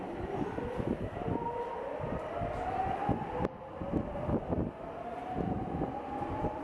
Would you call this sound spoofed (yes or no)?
no